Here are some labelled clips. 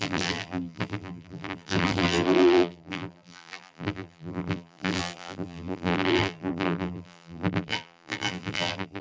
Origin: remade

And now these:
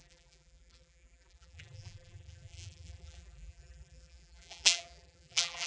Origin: remade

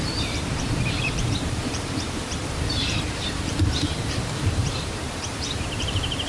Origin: remade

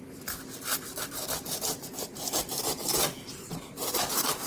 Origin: recorded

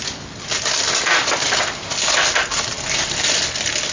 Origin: recorded